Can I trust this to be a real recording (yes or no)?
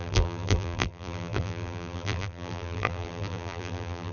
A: no